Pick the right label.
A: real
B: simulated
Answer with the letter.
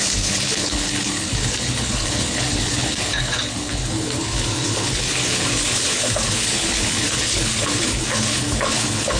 B